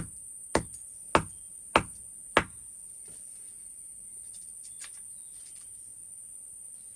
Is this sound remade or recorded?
recorded